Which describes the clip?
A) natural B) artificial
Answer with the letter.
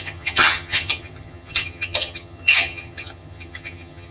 B